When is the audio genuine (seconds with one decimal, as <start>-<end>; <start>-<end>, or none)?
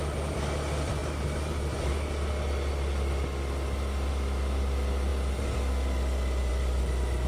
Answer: 0.0-7.3